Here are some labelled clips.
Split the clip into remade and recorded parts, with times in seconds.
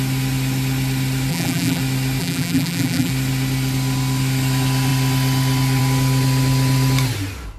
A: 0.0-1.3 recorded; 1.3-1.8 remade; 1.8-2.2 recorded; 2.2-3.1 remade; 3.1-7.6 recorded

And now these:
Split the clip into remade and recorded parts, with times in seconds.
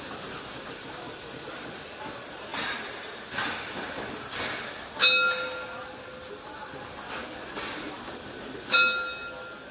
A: 0.0-2.5 recorded; 2.5-4.1 remade; 4.1-9.7 recorded